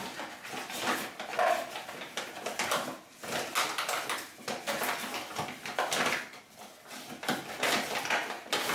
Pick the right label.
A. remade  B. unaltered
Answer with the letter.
B